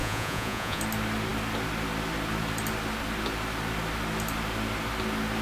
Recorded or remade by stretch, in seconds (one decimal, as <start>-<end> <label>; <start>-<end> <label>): 0.0-0.8 remade; 0.8-5.4 recorded